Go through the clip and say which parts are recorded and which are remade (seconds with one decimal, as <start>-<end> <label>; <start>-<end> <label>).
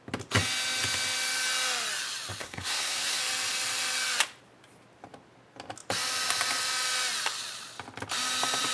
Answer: 0.0-2.4 recorded; 2.4-3.2 remade; 3.2-8.7 recorded